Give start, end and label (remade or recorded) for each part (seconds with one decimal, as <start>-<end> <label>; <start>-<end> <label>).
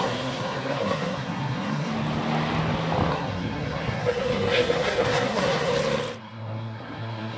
0.0-1.9 remade; 1.9-3.1 recorded; 3.1-5.7 remade; 5.7-6.2 recorded; 6.2-7.4 remade